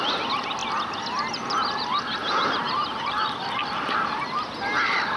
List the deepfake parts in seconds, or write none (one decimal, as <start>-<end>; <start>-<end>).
2.2-3.4